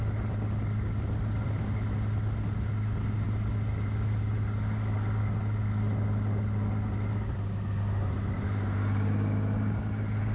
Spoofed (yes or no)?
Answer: no